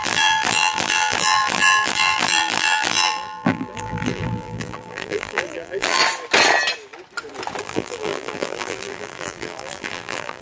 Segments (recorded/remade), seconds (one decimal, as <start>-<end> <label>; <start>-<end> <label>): 0.0-6.0 remade; 6.0-7.6 recorded; 7.6-10.4 remade